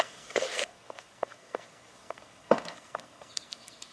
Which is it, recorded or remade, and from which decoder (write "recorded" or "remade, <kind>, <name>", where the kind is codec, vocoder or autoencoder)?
remade, codec, SNAC